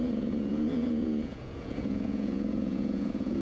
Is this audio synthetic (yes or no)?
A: yes